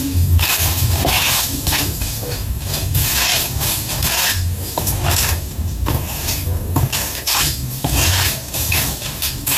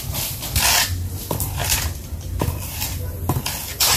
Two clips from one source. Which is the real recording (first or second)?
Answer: second